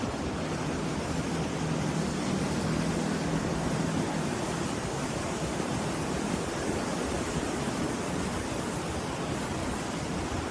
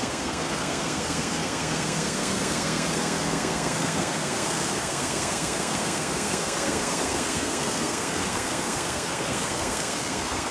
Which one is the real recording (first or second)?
first